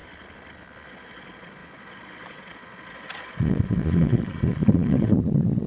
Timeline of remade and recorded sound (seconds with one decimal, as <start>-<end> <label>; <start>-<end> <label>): 0.0-0.9 recorded; 0.9-5.7 remade